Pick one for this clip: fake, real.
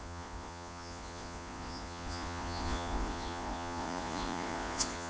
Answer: fake